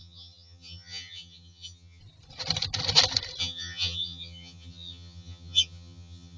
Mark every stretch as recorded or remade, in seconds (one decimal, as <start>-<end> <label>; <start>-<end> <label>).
0.0-2.0 remade; 2.0-3.4 recorded; 3.4-6.4 remade